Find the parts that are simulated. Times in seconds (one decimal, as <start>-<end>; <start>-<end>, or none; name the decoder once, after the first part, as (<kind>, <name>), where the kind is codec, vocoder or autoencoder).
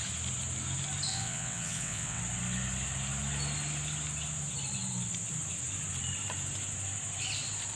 1.1-2.2 (vocoder, WaveNeXt)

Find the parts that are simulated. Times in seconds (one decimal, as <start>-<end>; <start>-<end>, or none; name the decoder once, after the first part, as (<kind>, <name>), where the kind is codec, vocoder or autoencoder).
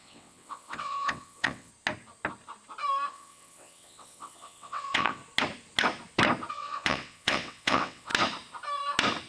0.0-1.7 (vocoder, WaveNeXt); 3.1-5.2; 6.5-8.1